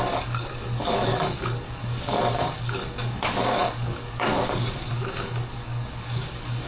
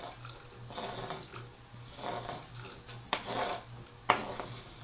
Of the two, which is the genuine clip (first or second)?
second